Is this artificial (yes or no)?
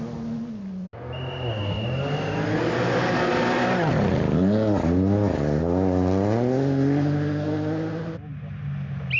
no